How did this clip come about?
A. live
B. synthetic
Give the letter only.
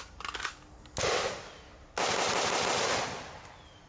A